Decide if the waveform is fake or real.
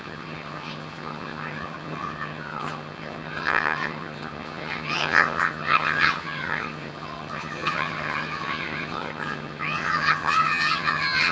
fake